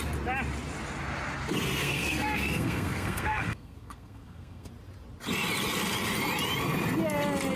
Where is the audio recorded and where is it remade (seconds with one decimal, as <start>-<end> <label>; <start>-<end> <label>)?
0.0-1.8 recorded; 1.8-4.7 remade; 4.7-7.6 recorded